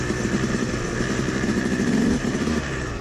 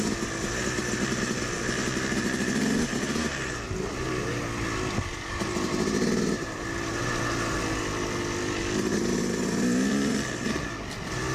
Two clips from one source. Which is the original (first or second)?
second